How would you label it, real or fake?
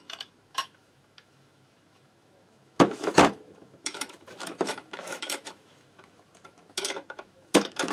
fake